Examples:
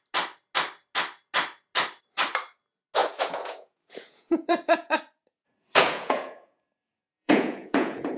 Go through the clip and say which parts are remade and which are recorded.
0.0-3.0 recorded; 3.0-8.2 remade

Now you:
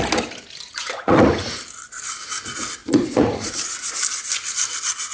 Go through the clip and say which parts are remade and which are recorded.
0.0-0.7 recorded; 0.7-1.6 remade; 1.6-2.8 recorded; 2.8-3.5 remade; 3.5-5.1 recorded